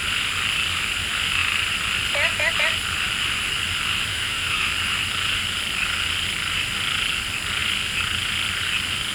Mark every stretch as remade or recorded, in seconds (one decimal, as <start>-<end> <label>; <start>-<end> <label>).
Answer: 0.0-4.1 recorded; 4.1-4.7 remade; 4.7-9.1 recorded